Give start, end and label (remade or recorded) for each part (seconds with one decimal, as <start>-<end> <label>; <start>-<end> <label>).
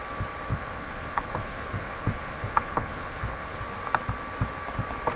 0.0-0.5 recorded; 0.5-3.6 remade; 3.6-5.2 recorded